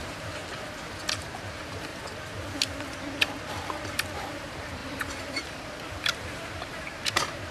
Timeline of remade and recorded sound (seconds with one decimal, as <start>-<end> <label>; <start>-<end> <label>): 0.0-0.4 remade; 0.4-1.5 recorded; 1.5-1.9 remade; 1.9-3.9 recorded; 3.9-7.5 remade